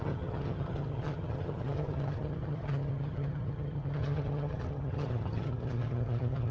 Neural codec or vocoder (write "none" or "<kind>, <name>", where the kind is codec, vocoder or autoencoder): vocoder, HiFi-GAN